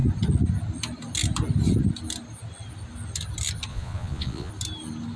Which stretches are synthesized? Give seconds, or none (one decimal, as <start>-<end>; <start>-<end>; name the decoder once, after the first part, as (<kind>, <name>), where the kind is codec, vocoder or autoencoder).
3.7-4.5 (vocoder, Vocos)